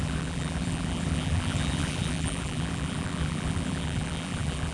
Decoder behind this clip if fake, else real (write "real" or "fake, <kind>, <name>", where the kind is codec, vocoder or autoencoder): fake, vocoder, BigVGAN v2